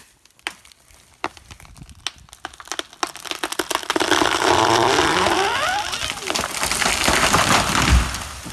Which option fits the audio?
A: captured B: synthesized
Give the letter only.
A